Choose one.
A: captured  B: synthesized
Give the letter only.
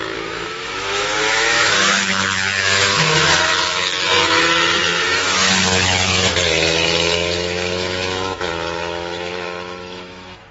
B